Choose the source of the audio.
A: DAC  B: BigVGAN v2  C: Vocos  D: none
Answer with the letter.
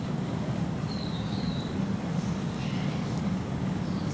A